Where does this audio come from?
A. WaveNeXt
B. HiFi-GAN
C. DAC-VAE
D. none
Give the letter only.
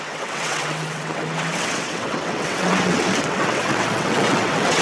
A